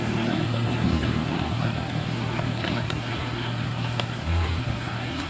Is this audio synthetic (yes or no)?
yes